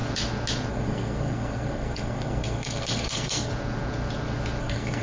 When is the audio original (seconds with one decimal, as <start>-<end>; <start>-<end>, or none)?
0.0-0.7; 3.5-4.6